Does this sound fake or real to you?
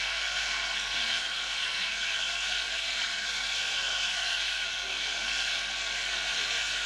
fake